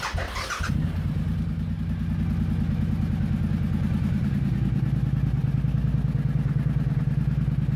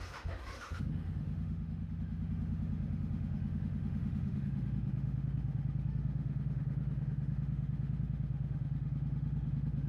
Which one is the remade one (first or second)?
second